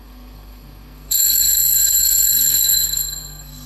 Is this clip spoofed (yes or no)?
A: yes